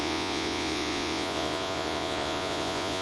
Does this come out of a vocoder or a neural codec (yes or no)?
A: yes